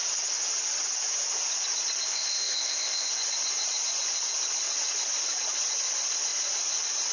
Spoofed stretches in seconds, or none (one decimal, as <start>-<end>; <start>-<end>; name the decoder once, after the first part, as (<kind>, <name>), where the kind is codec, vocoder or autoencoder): 2.1-3.1 (codec, ZipCodec)